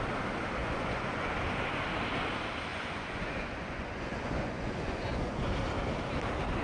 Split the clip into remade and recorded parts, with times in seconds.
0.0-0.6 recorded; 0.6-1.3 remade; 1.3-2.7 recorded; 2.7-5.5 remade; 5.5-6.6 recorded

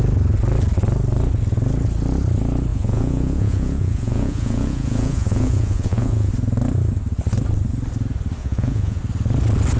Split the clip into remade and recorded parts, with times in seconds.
0.0-2.7 recorded; 2.7-6.3 remade; 6.3-8.4 recorded; 8.4-9.0 remade; 9.0-9.8 recorded